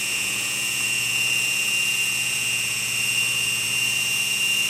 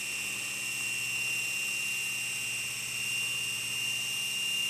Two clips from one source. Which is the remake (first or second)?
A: first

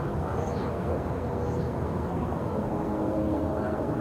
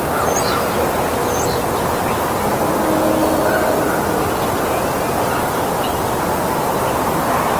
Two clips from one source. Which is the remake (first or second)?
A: first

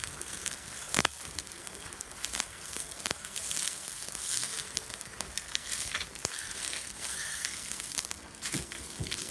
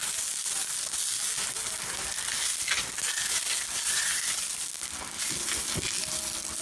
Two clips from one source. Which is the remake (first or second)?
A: first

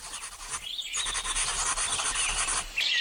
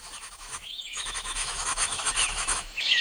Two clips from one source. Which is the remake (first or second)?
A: second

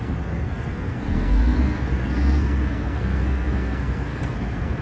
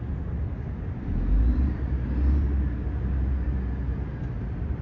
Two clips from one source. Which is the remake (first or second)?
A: first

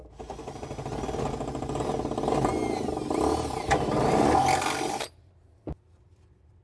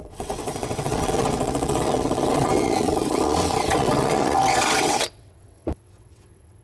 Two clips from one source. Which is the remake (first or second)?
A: second